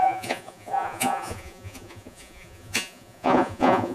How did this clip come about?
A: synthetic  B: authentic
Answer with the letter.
A